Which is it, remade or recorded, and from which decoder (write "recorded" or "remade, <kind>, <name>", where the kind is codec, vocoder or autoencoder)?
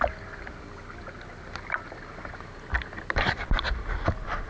recorded